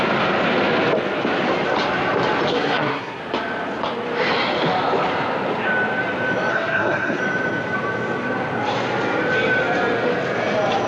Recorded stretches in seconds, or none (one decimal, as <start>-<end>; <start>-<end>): 0.0-2.5; 3.2-6.5; 7.2-10.9